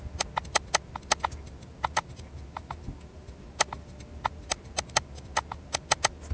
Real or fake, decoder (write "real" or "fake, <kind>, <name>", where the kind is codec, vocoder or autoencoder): real